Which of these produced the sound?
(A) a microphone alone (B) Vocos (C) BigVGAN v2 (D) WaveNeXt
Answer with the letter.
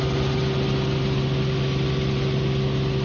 A